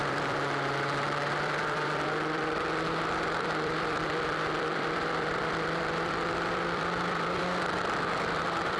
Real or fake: fake